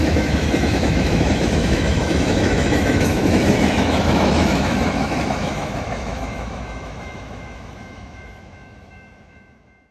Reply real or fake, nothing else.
fake